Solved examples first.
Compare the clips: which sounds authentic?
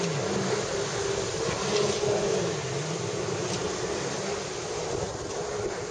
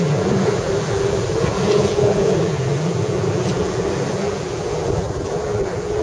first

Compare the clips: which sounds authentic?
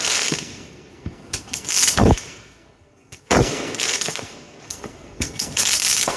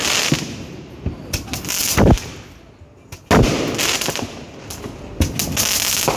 second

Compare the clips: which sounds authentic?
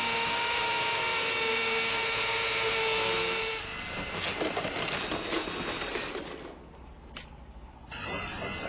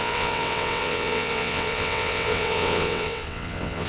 first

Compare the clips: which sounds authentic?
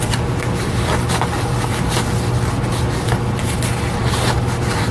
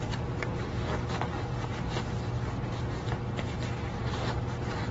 first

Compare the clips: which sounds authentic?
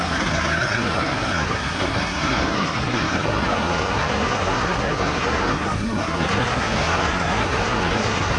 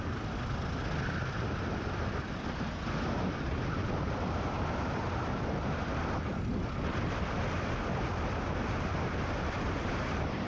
second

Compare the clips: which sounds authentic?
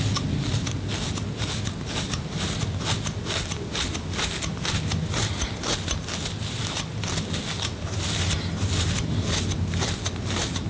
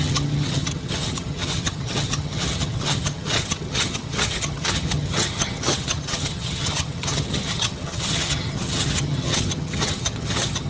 first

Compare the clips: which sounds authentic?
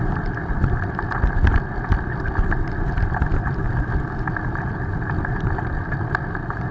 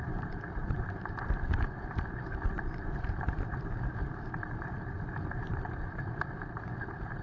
first